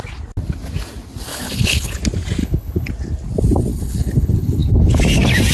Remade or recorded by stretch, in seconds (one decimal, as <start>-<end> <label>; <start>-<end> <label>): 0.0-1.3 recorded; 1.3-2.0 remade; 2.0-2.4 recorded; 2.4-2.9 remade; 2.9-3.7 recorded; 3.7-5.0 remade; 5.0-5.5 recorded